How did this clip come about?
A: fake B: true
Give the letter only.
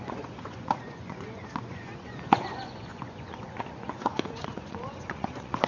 A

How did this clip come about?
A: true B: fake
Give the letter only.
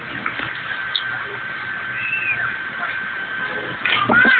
A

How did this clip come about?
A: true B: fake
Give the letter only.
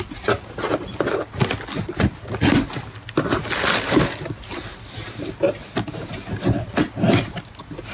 A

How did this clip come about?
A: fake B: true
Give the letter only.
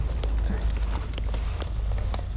B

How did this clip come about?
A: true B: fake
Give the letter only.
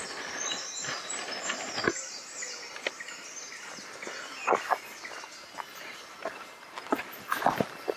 A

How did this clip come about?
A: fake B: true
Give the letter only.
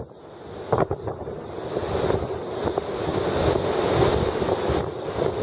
B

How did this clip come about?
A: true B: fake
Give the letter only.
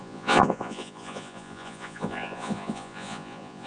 B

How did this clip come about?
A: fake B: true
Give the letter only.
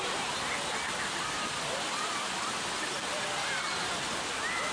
B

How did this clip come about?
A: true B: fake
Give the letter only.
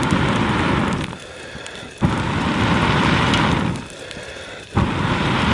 A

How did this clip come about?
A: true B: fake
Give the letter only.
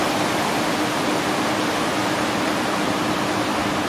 A